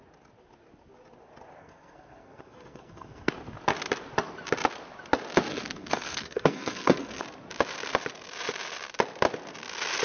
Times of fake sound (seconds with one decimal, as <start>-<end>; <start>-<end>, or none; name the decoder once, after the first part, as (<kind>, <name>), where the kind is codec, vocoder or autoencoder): 1.6-3.3 (codec, SNAC); 5.5-7.2